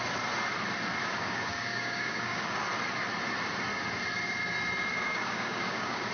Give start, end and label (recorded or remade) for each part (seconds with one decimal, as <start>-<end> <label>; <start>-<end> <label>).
0.0-1.0 recorded; 1.0-2.6 remade; 2.6-4.9 recorded; 4.9-6.1 remade